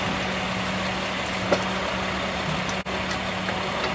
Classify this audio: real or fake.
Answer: real